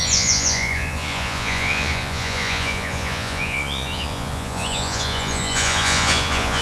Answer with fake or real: fake